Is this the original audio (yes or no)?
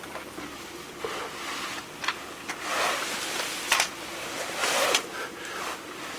yes